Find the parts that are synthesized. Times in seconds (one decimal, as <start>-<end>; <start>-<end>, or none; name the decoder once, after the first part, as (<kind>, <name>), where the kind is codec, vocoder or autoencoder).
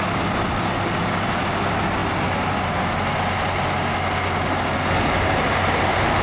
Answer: none